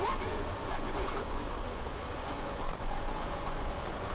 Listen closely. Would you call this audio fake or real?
fake